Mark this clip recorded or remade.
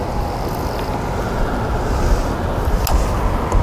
recorded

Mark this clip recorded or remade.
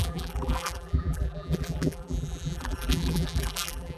remade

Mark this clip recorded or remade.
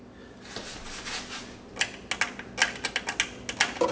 recorded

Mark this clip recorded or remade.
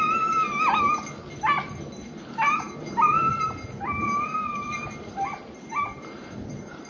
recorded